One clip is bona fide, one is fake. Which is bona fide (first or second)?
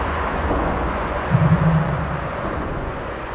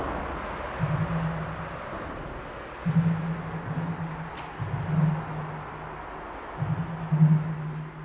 second